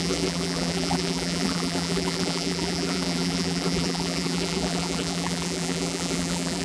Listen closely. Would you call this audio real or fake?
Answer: fake